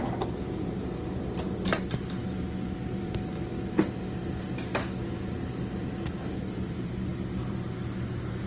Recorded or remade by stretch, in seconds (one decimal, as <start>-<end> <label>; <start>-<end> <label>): 0.0-4.7 recorded; 4.7-5.3 remade; 5.3-8.5 recorded